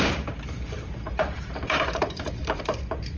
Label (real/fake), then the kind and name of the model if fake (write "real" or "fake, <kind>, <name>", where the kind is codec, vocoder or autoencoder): fake, vocoder, BigVGAN v2